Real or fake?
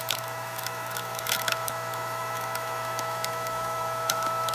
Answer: fake